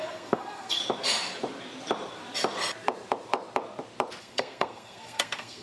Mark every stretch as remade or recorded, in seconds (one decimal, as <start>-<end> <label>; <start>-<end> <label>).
0.0-0.8 remade; 0.8-4.2 recorded; 4.2-5.6 remade